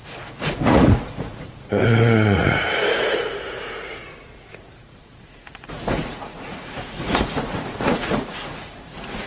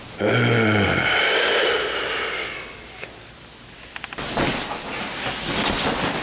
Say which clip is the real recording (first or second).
second